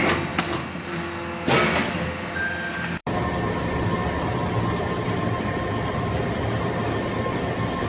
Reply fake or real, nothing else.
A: real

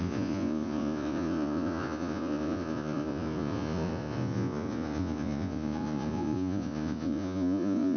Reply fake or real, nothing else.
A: fake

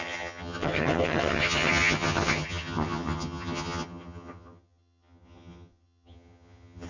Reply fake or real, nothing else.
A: fake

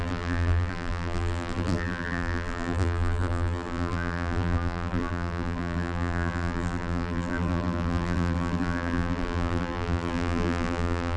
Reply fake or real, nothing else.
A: fake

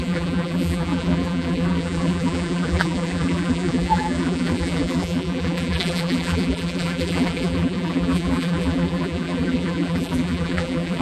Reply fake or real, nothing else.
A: fake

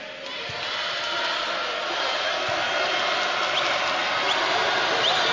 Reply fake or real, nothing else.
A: real